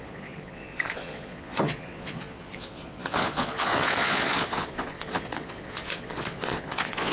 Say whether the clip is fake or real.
fake